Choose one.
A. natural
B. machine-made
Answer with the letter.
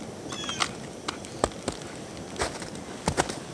A